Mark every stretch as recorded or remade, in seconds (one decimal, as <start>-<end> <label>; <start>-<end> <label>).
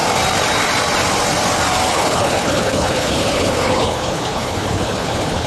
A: 0.0-1.9 recorded; 1.9-5.5 remade